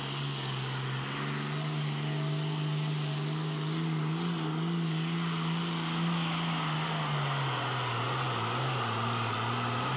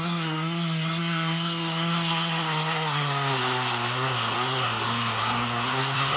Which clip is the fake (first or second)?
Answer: second